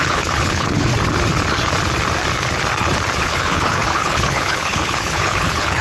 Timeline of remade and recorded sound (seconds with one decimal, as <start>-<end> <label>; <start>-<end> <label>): 0.0-0.9 remade; 0.9-3.2 recorded; 3.2-5.8 remade